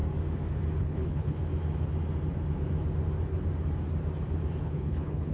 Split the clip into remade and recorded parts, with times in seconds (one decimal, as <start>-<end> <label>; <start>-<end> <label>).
0.0-0.8 recorded; 0.8-1.4 remade; 1.4-4.6 recorded; 4.6-5.3 remade

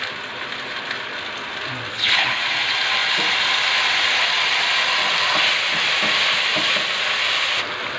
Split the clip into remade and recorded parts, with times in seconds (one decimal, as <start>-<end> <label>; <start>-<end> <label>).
0.0-1.9 recorded; 1.9-2.4 remade; 2.4-8.0 recorded

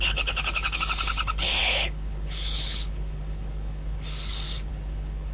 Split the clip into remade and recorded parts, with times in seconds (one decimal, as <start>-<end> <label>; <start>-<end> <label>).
0.0-5.3 remade

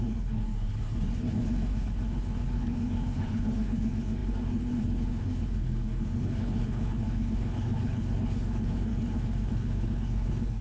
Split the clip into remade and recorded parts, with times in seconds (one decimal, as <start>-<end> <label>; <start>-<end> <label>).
0.0-10.6 remade

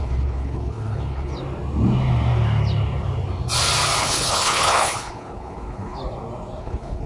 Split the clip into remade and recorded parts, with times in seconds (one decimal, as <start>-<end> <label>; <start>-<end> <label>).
0.0-1.3 remade; 1.3-4.0 recorded; 4.0-6.0 remade; 6.0-6.6 recorded; 6.6-7.1 remade

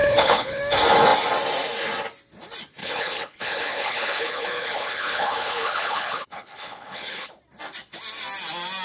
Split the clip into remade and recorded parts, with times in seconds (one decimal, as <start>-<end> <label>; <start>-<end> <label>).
0.0-0.6 remade; 0.6-2.8 recorded; 2.8-7.3 remade; 7.3-8.8 recorded